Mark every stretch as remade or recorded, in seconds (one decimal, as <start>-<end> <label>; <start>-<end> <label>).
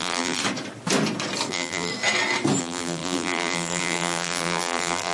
0.0-0.4 remade; 0.4-1.5 recorded; 1.5-1.9 remade; 1.9-2.6 recorded; 2.6-5.1 remade